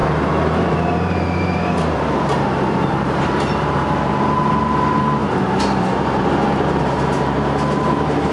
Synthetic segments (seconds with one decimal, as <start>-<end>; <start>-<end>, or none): 0.0-8.3